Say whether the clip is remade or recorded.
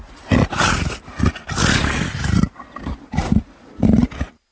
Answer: recorded